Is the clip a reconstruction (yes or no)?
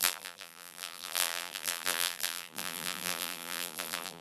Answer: yes